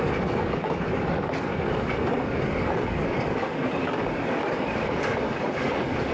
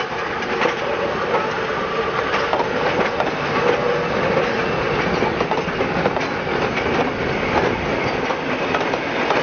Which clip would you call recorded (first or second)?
second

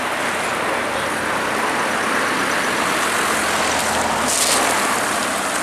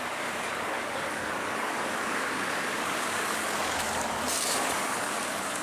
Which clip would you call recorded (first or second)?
first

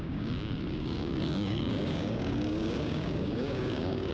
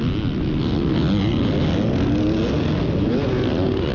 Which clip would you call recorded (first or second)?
second